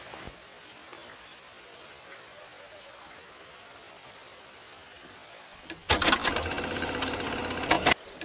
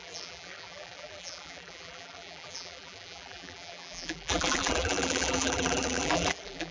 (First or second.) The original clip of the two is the first